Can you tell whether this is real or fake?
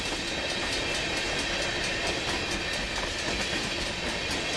real